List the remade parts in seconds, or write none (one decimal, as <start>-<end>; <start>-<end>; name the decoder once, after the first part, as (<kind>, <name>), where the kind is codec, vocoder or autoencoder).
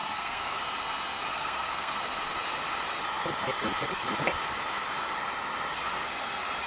0.0-0.6 (codec, SNAC); 1.3-2.0